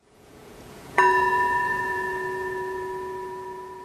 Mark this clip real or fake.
fake